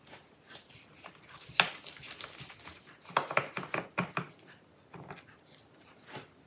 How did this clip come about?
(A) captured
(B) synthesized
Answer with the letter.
A